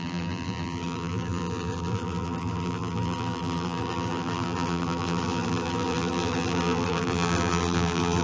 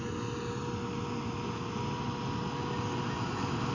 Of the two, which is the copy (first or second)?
first